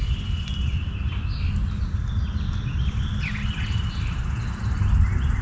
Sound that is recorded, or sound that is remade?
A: recorded